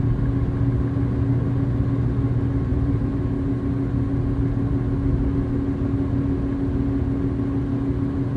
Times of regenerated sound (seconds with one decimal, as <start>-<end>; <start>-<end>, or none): 2.7-3.2